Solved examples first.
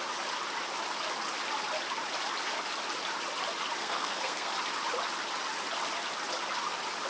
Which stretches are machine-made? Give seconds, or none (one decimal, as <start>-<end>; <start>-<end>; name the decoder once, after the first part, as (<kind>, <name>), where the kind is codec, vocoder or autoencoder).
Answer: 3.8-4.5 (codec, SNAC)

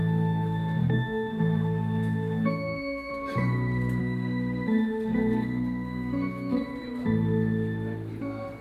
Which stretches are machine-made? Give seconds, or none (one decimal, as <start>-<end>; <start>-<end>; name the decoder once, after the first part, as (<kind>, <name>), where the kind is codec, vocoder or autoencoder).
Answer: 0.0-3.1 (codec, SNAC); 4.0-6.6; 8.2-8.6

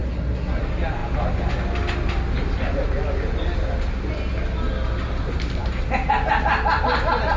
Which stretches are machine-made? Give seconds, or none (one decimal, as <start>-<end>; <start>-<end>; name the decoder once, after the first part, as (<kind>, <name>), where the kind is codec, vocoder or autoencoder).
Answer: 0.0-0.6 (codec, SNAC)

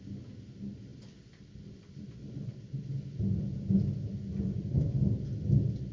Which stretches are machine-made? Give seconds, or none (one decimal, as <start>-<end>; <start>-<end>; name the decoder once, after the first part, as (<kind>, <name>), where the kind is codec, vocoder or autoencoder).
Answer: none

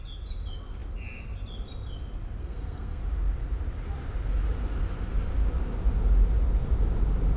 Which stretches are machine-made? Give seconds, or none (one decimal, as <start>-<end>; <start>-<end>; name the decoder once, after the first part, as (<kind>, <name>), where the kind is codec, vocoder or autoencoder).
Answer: 2.4-3.0 (codec, SNAC)

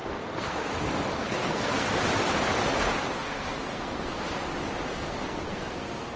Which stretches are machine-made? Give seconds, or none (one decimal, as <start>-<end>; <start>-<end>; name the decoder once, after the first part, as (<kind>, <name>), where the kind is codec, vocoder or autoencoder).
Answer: 0.0-0.7 (codec, SNAC); 1.1-1.9; 3.2-4.2; 4.9-6.2

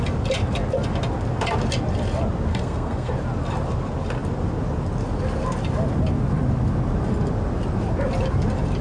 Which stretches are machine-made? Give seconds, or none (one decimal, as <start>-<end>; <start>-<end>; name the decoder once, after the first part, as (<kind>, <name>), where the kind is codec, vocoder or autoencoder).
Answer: 2.5-3.1 (codec, SNAC)